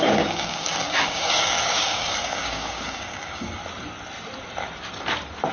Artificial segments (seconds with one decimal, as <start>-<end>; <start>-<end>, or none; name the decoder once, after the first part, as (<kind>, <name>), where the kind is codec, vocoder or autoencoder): 0.0-3.6 (codec, DAC)